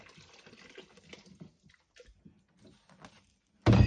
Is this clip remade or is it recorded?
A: recorded